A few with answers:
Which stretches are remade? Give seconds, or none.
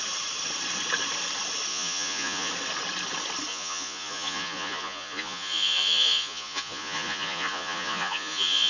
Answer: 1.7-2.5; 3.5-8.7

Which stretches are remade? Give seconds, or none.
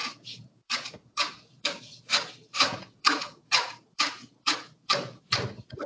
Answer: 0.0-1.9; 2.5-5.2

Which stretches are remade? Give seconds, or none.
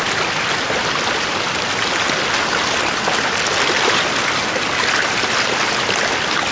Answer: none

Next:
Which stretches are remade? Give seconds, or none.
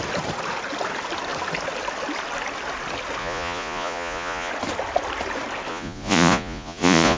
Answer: 3.2-4.5; 5.7-7.2